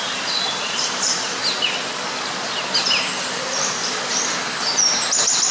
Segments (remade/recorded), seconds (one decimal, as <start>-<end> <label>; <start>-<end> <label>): 0.0-1.4 remade; 1.4-2.8 recorded; 2.8-3.8 remade; 3.8-4.6 recorded; 4.6-5.5 remade